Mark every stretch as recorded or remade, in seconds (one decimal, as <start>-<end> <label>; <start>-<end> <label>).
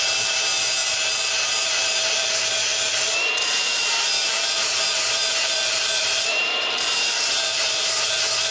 0.0-8.5 remade